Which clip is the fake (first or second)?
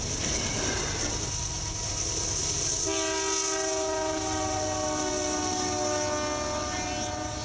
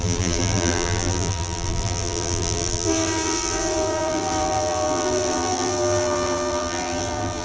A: second